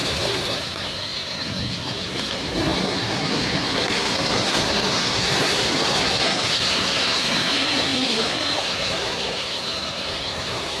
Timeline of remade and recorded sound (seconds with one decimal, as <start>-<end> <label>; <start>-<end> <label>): 0.0-10.8 remade